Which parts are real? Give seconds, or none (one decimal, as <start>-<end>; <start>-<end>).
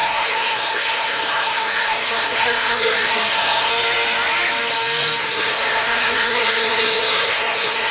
3.7-5.2